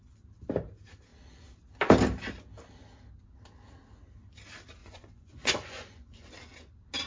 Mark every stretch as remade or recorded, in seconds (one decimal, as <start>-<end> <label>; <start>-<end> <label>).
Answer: 0.0-4.8 recorded; 4.8-6.3 remade; 6.3-7.1 recorded